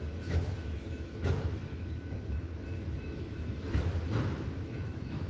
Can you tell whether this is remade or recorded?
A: remade